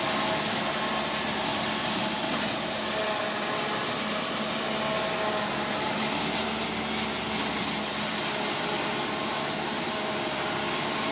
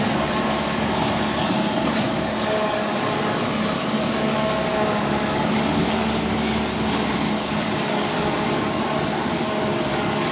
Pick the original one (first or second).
first